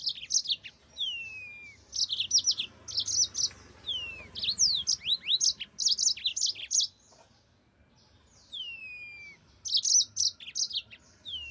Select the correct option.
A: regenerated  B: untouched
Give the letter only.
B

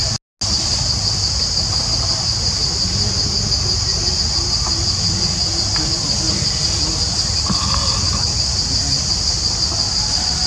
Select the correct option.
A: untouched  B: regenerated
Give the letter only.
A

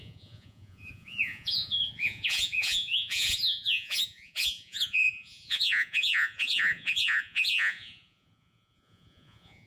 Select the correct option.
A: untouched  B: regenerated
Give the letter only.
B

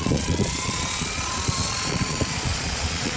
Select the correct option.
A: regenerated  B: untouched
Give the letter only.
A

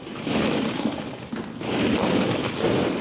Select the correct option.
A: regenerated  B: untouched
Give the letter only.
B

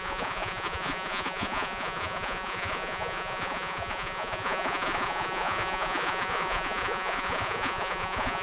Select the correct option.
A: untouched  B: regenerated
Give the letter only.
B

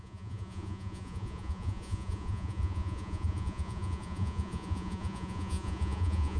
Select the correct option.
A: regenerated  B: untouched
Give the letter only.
A